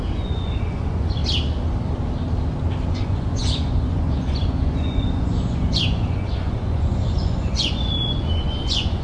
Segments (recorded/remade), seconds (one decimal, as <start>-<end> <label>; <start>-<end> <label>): 0.0-1.2 remade; 1.2-2.9 recorded; 2.9-9.0 remade